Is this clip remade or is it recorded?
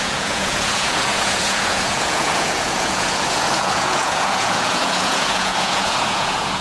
remade